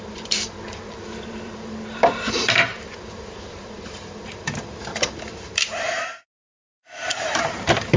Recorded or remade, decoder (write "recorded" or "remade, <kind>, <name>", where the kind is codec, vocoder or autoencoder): remade, vocoder, BigVGAN v2